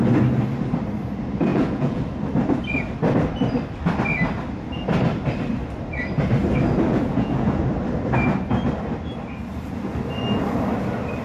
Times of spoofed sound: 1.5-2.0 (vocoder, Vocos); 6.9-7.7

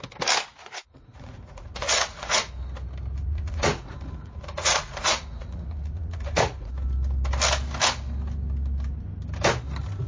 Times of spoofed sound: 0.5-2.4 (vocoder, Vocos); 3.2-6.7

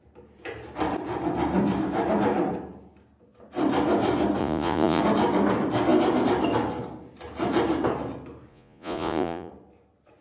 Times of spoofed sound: 4.4-5.0 (vocoder, Vocos); 8.5-9.5